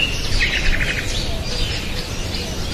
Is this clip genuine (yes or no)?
yes